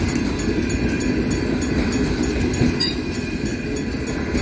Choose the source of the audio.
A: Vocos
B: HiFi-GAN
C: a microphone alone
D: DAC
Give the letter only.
C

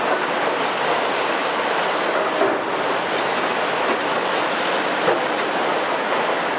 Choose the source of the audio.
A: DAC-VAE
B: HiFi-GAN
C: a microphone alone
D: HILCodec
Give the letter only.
C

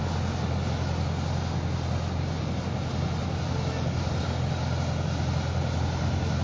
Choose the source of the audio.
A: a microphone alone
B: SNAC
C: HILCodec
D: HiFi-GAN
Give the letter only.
A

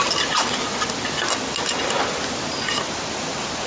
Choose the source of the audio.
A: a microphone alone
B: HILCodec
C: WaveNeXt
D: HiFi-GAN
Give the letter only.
A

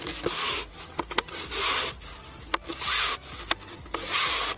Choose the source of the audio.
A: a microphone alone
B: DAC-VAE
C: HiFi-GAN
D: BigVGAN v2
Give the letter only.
A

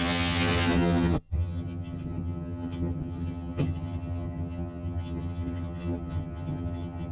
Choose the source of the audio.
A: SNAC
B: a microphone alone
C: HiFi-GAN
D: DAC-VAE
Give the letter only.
C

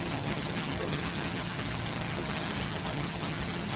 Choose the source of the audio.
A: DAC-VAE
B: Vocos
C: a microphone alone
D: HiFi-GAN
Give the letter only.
D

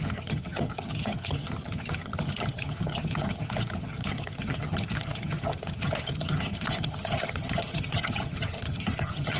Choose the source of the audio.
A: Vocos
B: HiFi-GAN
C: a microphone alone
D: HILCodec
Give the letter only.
B